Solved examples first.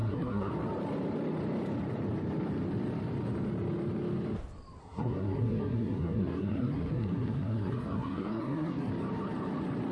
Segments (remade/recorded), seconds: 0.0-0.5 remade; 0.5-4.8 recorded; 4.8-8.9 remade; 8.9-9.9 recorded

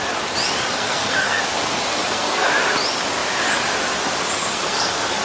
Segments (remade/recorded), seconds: 0.0-0.7 recorded; 0.7-1.4 remade; 1.4-1.9 recorded; 1.9-2.5 remade; 2.5-4.4 recorded; 4.4-5.2 remade